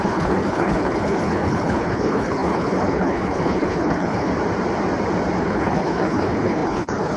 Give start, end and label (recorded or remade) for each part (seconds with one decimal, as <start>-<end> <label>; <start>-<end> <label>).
0.0-4.3 remade; 4.3-5.4 recorded; 5.4-7.2 remade